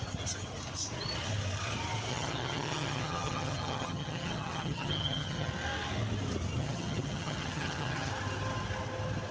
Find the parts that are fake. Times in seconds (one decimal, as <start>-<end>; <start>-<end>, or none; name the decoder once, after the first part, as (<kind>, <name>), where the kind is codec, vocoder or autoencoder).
2.1-5.5 (vocoder, HiFi-GAN); 6.6-8.1